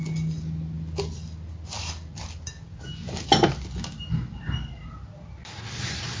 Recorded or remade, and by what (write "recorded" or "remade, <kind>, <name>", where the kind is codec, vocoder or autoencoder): recorded